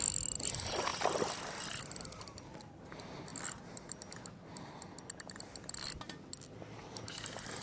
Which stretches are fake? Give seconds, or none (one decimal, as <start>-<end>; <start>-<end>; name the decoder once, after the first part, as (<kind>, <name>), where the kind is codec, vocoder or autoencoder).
none